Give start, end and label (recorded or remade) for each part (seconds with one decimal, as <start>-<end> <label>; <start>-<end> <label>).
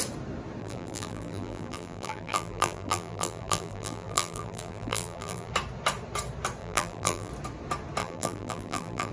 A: 0.0-0.6 recorded; 0.6-5.5 remade; 5.5-6.6 recorded; 6.6-7.3 remade; 7.3-8.0 recorded; 8.0-9.1 remade